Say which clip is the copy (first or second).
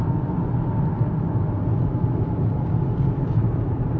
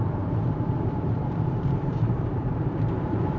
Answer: second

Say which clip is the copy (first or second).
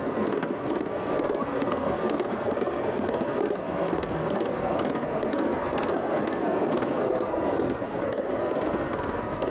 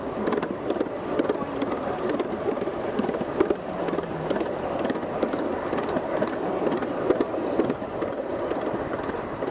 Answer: first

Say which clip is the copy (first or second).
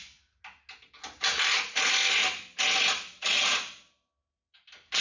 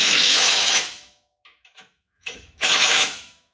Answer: second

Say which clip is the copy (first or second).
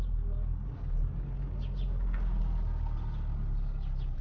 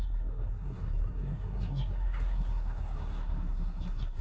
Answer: second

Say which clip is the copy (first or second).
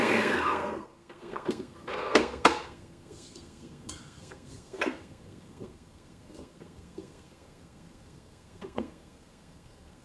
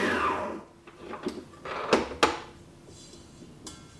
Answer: first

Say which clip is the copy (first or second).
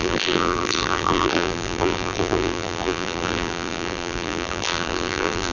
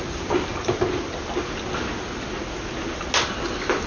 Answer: first